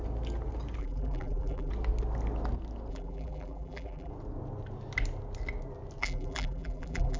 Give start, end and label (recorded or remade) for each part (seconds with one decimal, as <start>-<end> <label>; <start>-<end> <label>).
0.0-0.8 recorded; 0.8-1.7 remade; 1.7-2.9 recorded; 2.9-4.1 remade; 4.1-6.0 recorded; 6.0-7.2 remade